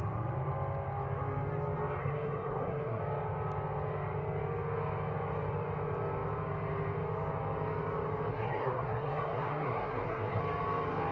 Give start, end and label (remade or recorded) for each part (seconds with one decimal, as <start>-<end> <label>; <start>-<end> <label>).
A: 0.0-2.0 recorded; 2.0-3.0 remade; 3.0-8.3 recorded; 8.3-10.4 remade; 10.4-11.1 recorded